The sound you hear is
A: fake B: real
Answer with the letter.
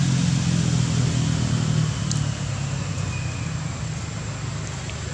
B